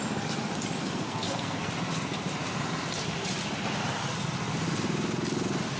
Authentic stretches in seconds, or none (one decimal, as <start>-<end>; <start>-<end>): 0.0-0.8; 1.7-5.8